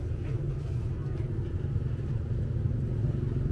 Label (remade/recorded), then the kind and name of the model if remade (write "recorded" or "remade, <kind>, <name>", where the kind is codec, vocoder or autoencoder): recorded